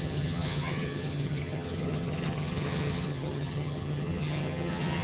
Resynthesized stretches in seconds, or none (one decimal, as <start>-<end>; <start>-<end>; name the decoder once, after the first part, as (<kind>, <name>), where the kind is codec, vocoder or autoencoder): 0.0-5.0 (vocoder, HiFi-GAN)